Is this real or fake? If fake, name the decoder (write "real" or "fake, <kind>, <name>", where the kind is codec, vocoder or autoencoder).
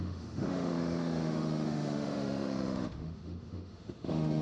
fake, autoencoder, DAC-VAE